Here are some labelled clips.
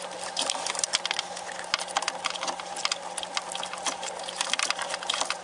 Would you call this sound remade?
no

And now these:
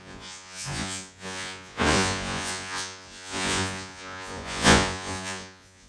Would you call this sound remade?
yes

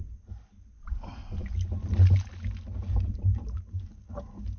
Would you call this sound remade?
no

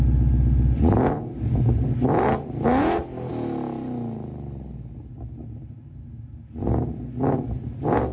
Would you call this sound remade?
no